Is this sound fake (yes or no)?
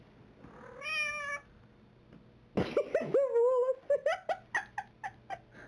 no